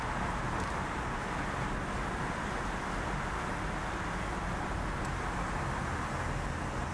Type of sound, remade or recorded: recorded